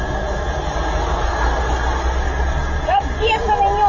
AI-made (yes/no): no